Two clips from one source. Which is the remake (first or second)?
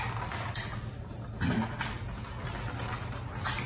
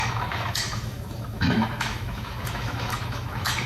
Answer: second